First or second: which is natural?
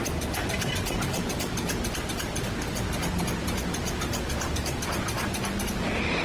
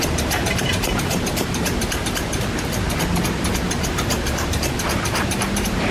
first